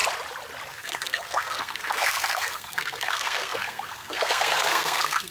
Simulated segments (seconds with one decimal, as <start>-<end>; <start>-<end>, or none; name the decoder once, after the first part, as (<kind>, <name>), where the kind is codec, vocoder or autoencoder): 0.7-5.3 (codec, SNAC)